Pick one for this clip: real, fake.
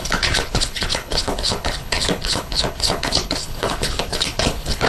fake